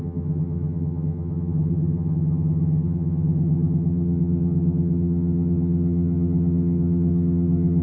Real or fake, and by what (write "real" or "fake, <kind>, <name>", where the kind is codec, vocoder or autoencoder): fake, vocoder, HiFi-GAN